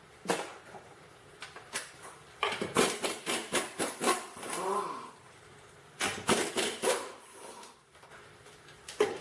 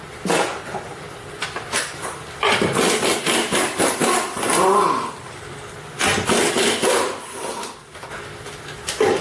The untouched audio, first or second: second